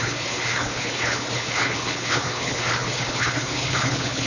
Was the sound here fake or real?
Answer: fake